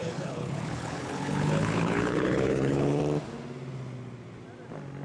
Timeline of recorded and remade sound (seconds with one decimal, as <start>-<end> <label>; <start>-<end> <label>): 0.0-3.0 remade; 3.0-5.0 recorded